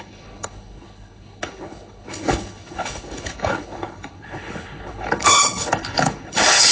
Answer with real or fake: fake